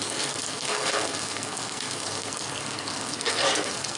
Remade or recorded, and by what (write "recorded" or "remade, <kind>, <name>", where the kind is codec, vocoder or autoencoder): remade, codec, SNAC